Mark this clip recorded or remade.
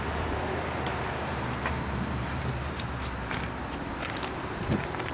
remade